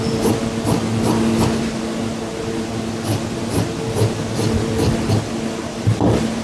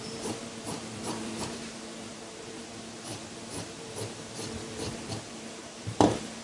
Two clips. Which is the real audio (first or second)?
first